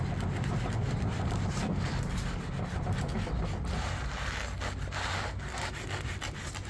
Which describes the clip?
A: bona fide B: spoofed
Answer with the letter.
A